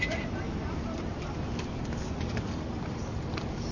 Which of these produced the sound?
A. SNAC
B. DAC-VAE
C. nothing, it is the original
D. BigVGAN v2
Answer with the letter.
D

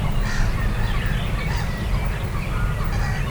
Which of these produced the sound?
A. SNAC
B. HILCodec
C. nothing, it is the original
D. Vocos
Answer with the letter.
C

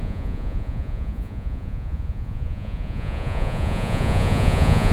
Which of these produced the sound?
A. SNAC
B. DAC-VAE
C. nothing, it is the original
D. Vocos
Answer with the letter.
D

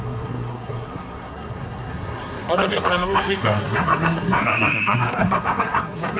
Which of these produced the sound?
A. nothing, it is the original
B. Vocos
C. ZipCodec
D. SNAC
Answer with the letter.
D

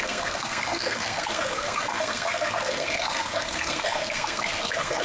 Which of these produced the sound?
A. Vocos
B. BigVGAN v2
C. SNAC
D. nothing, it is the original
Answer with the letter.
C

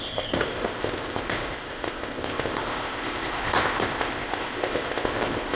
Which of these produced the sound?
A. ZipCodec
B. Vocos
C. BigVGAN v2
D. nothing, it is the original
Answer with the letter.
A